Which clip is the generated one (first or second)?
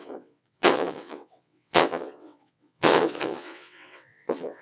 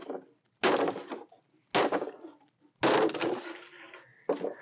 first